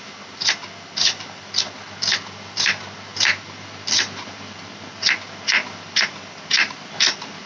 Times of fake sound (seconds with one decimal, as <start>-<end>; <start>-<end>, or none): none